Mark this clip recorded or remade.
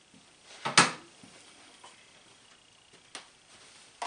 recorded